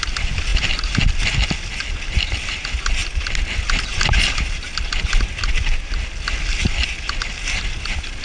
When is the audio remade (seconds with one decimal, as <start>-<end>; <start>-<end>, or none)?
none